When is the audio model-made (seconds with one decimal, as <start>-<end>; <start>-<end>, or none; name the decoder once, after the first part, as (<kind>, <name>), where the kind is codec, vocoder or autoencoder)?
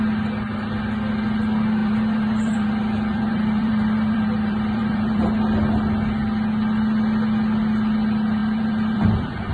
1.8-5.2 (vocoder, BigVGAN v2); 8.4-9.5